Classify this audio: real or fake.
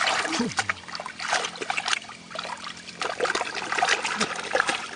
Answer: real